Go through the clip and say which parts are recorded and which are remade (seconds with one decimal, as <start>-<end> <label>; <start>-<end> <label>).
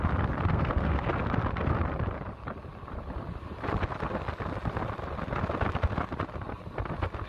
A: 0.0-0.5 recorded; 0.5-1.1 remade; 1.1-7.3 recorded